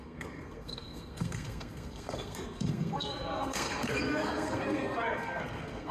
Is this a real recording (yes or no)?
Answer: no